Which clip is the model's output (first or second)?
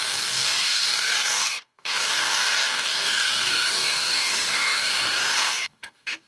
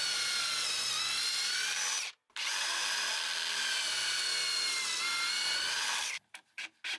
first